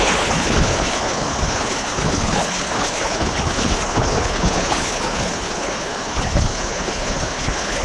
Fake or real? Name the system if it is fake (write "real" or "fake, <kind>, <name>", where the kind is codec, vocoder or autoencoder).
fake, codec, HILCodec